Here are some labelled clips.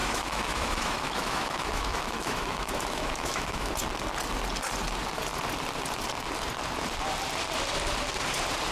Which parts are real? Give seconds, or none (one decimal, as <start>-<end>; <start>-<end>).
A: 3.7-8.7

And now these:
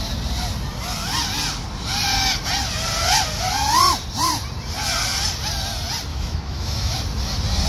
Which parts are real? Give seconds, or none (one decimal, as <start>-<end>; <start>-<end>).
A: 0.0-6.1; 7.0-7.7

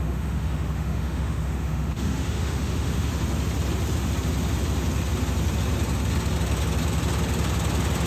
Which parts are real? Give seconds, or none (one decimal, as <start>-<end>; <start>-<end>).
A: 3.1-8.1

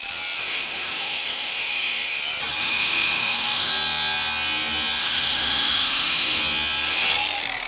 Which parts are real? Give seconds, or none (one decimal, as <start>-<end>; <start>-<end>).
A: 0.0-0.4; 2.2-2.6; 3.7-5.0; 6.4-7.7